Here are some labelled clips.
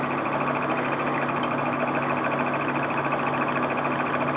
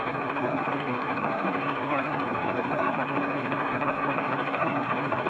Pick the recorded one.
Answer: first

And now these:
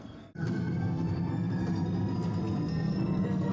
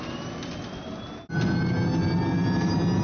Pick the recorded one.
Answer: second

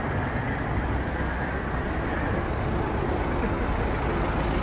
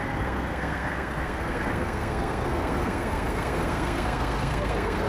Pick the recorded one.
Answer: first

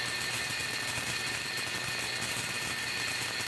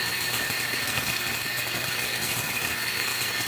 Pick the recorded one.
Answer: first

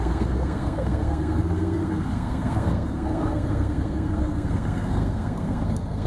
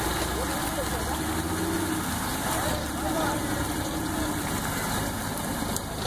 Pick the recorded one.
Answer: second